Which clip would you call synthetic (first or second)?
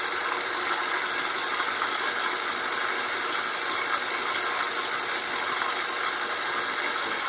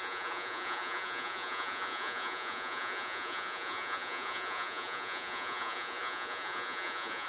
second